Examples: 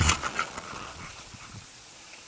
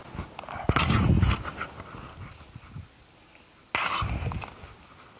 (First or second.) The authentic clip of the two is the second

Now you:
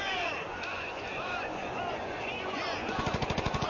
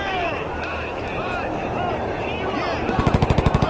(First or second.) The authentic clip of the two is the second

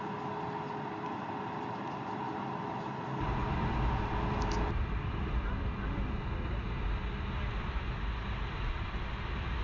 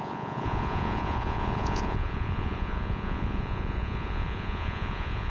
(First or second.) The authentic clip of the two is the first